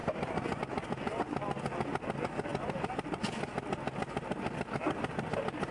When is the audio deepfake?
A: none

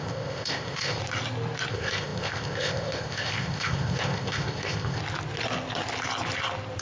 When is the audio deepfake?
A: 0.0-1.0 (codec, ZipCodec); 1.7-5.0

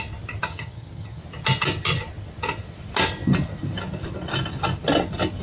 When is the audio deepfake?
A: 0.5-1.2 (vocoder, HiFi-GAN)

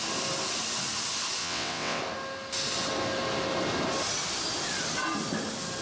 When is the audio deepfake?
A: 1.4-2.0 (vocoder, WaveNeXt)

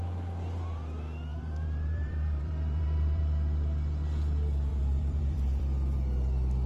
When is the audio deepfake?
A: 1.3-3.2 (vocoder, BigVGAN v2); 4.7-5.6